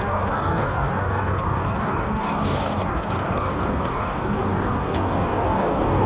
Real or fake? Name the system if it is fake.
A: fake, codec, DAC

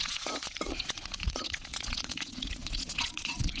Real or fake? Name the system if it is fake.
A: fake, vocoder, Vocos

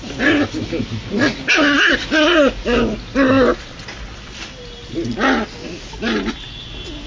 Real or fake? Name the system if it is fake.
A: real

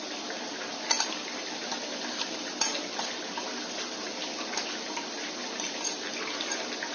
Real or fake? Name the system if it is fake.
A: real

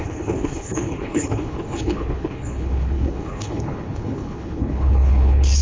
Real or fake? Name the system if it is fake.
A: fake, codec, HILCodec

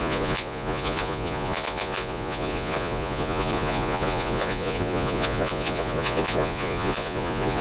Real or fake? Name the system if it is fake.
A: fake, vocoder, Vocos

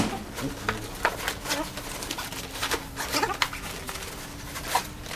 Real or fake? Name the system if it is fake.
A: real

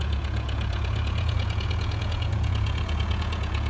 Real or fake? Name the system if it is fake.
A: fake, vocoder, Vocos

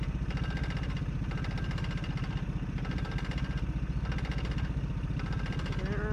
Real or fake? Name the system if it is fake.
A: real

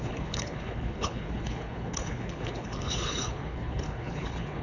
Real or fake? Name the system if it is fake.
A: fake, codec, HILCodec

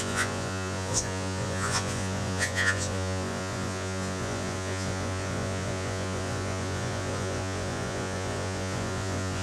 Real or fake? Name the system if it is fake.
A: fake, vocoder, Vocos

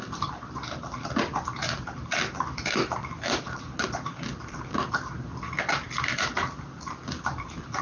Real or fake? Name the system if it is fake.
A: real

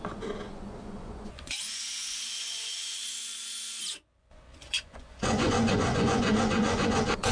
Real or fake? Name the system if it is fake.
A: fake, vocoder, Vocos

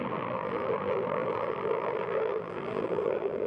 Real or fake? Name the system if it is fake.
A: fake, vocoder, BigVGAN v2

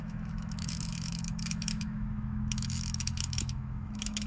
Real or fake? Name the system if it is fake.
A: fake, autoencoder, DAC-VAE